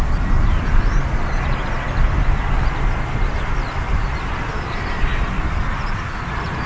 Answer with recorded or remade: recorded